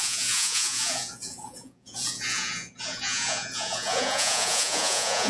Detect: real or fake fake